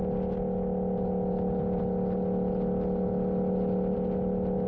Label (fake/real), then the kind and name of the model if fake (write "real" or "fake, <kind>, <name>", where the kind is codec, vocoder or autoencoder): real